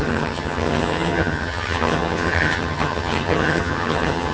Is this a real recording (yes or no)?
no